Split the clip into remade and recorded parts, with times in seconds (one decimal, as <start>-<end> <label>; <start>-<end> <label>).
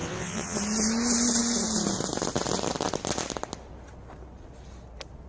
0.0-0.6 remade; 0.6-5.3 recorded